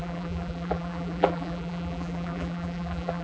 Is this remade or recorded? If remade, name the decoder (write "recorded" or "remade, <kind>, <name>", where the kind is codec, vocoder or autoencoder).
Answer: remade, vocoder, BigVGAN v2